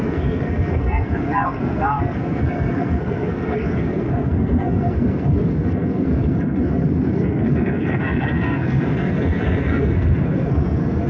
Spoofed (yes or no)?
yes